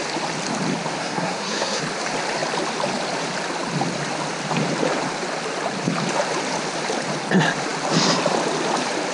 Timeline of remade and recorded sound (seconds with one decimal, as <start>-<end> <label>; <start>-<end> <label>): 0.0-1.0 recorded; 1.0-1.8 remade; 1.8-9.1 recorded